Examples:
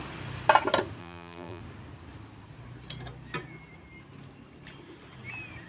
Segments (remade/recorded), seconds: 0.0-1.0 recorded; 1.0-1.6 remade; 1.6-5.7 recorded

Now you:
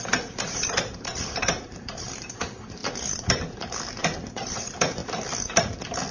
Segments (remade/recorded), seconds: 0.0-2.8 remade; 2.8-4.0 recorded; 4.0-5.0 remade; 5.0-6.1 recorded

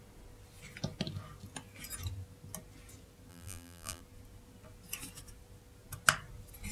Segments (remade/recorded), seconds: 0.0-3.3 recorded; 3.3-4.0 remade; 4.0-6.7 recorded

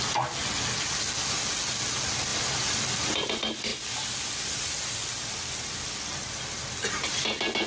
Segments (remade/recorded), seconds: 0.0-2.3 recorded; 2.3-3.3 remade; 3.3-7.7 recorded